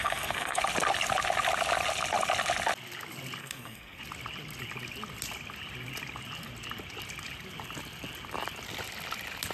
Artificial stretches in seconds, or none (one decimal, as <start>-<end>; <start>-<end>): 0.0-0.6; 3.4-4.0

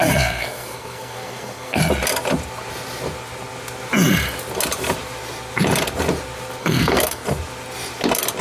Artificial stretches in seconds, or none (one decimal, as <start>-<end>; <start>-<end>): 0.0-1.8; 6.6-7.2

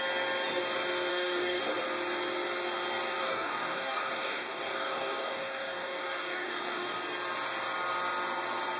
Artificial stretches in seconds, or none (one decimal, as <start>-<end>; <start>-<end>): 1.1-1.6; 3.2-7.0

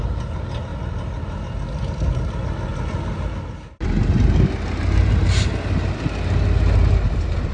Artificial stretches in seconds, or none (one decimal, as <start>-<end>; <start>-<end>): none

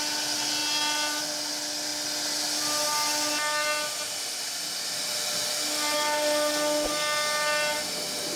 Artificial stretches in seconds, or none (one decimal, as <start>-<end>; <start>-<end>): none

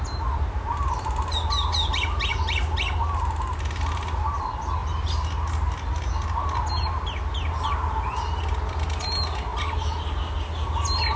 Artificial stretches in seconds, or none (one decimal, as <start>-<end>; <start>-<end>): none

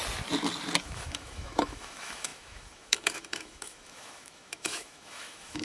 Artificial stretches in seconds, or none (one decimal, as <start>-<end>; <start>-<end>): 0.8-5.6

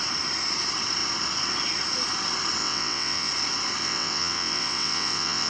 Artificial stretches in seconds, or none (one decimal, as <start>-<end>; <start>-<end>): 2.6-3.3; 3.8-5.5